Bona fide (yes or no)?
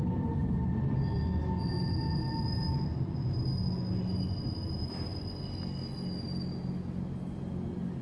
yes